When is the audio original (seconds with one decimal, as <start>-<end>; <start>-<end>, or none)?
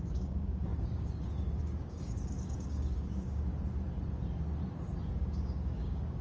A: 3.5-5.1